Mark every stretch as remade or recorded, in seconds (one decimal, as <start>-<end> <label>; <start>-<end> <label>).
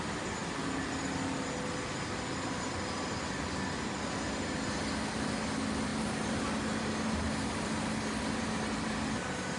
0.0-9.6 recorded